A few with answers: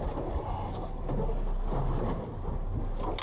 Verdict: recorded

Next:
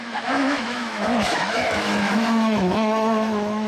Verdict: remade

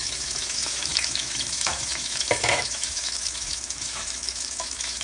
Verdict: remade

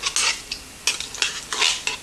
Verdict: recorded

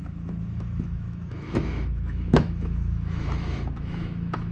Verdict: remade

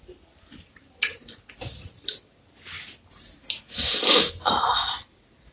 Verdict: recorded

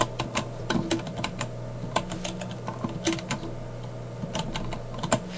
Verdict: recorded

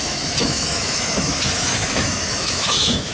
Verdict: remade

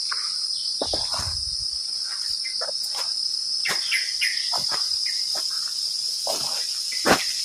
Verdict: recorded